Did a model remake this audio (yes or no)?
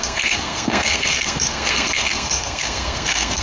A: yes